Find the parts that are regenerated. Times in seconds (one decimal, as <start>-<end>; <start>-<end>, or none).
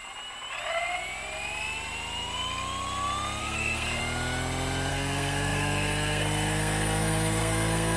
3.4-4.0; 4.9-8.0